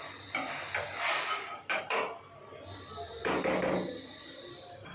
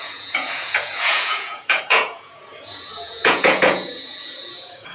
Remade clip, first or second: second